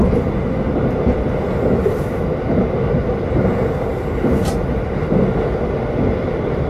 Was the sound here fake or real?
real